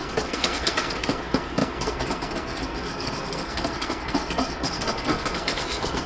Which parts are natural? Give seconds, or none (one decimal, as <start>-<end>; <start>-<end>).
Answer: none